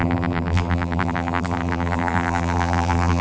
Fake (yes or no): yes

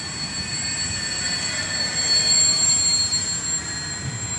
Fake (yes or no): yes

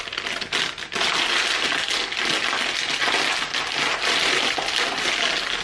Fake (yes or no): no